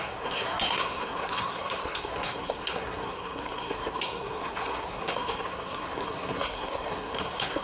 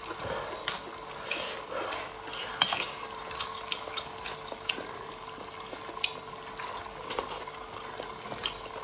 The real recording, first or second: second